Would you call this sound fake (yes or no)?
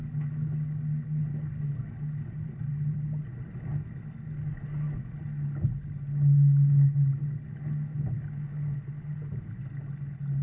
no